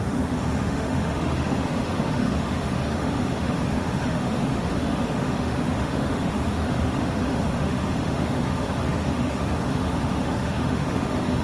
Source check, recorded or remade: remade